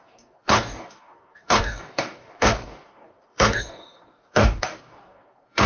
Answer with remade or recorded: remade